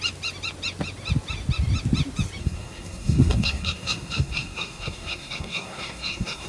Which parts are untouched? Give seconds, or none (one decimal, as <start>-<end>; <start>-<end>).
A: 0.0-2.4